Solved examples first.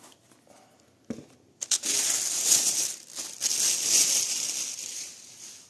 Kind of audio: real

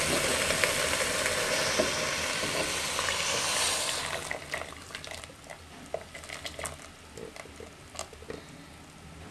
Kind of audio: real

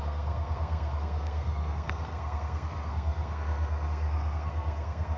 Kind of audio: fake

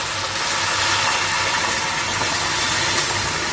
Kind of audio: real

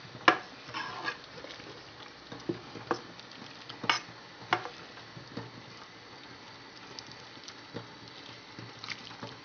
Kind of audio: real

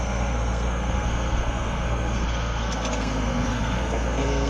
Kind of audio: fake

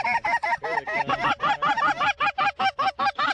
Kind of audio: real